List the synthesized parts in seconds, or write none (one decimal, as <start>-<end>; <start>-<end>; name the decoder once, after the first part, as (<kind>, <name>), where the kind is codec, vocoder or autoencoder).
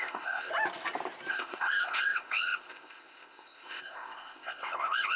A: 0.0-0.5 (codec, ZipCodec); 1.3-5.2